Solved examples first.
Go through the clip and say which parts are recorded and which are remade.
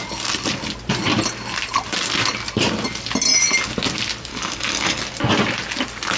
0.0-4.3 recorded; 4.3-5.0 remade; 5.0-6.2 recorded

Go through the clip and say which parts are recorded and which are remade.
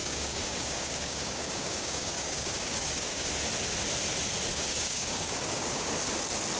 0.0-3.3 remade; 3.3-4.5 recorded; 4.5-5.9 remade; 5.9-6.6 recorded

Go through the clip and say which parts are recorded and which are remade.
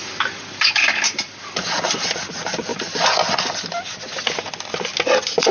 0.0-5.5 recorded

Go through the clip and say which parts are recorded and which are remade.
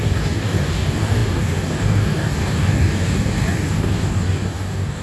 0.0-5.0 remade